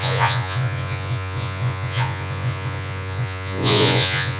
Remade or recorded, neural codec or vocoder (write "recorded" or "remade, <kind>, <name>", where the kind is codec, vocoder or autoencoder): remade, vocoder, Vocos